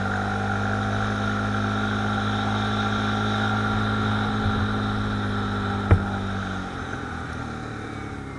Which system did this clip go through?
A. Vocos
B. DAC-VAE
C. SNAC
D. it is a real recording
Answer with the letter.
D